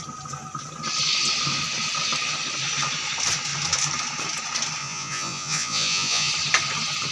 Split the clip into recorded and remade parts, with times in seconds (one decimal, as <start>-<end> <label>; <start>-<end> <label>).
0.0-4.8 recorded; 4.8-6.3 remade; 6.3-7.1 recorded